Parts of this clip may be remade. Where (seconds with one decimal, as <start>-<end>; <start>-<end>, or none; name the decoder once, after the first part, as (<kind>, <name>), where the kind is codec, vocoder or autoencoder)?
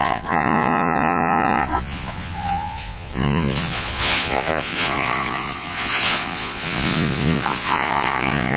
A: 0.0-8.6 (vocoder, Vocos)